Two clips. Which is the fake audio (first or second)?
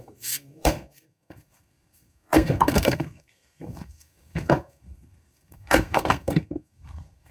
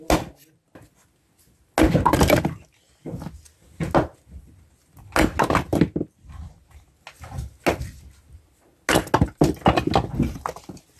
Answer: first